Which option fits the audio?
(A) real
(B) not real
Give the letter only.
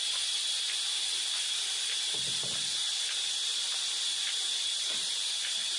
A